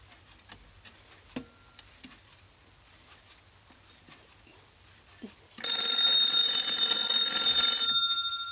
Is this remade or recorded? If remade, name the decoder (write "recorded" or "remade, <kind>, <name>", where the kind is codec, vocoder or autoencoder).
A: recorded